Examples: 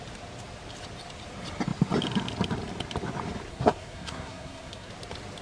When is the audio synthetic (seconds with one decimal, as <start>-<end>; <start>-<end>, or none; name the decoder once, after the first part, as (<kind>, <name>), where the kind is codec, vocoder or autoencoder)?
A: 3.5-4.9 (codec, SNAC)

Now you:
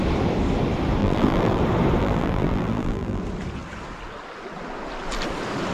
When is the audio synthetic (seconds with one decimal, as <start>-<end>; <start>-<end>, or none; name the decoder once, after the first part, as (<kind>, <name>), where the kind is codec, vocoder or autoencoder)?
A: 1.0-1.6 (vocoder, BigVGAN v2); 2.0-3.2

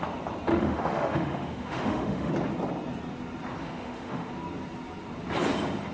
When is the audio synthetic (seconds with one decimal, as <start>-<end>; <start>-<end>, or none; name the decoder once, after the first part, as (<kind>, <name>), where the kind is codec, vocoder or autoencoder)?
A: 0.5-2.3 (autoencoder, DAC-VAE); 3.6-4.3

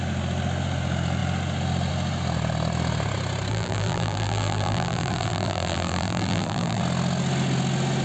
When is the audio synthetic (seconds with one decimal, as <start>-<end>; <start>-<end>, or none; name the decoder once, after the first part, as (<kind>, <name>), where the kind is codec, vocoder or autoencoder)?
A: 3.5-6.8 (vocoder, BigVGAN v2)